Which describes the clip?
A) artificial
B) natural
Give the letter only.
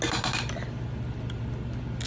B